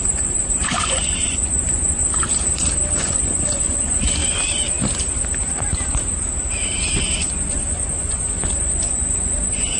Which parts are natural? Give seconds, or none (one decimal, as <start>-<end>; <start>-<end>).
2.0-3.0; 4.2-7.3